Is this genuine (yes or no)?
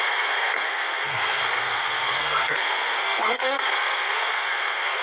no